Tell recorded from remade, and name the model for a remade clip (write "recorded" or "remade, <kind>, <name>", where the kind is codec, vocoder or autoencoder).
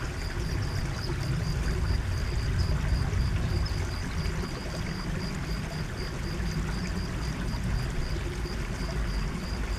recorded